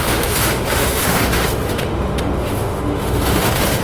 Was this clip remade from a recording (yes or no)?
yes